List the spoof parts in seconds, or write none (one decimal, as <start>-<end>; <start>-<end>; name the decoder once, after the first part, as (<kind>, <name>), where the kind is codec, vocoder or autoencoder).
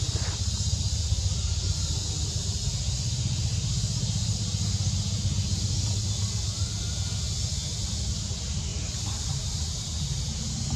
8.7-10.4 (vocoder, BigVGAN v2)